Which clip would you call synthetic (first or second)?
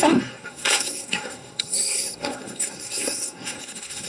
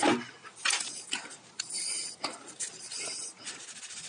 first